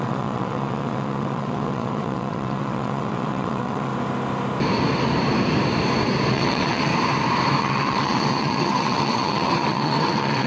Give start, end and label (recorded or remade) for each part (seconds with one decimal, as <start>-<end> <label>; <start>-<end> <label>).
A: 0.0-3.9 remade; 3.9-6.3 recorded; 6.3-6.9 remade; 6.9-7.6 recorded; 7.6-10.5 remade